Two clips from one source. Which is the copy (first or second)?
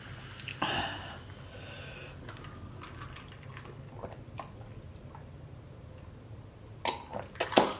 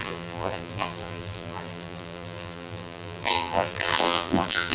second